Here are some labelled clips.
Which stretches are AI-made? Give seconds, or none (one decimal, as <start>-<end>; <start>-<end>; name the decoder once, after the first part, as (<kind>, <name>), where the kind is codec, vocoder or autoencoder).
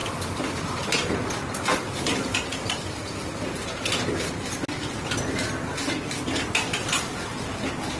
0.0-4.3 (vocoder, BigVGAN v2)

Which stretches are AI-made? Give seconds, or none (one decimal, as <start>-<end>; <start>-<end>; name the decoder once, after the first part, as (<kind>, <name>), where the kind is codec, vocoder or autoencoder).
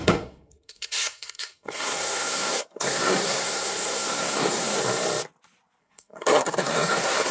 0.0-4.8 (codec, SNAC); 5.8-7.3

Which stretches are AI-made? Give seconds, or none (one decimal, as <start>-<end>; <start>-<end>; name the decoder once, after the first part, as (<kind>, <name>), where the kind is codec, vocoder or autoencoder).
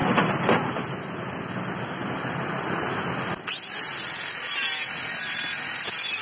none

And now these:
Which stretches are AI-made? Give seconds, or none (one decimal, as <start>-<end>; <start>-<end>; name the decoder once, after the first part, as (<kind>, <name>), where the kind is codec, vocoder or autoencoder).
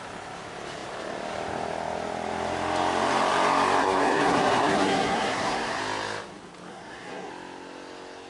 3.8-5.8 (codec, SNAC); 6.7-7.3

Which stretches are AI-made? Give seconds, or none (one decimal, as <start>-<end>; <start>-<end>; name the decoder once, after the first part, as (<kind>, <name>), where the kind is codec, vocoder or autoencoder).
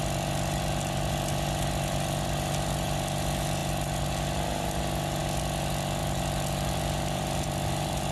6.0-8.1 (vocoder, BigVGAN v2)